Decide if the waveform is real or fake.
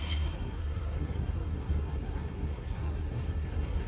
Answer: fake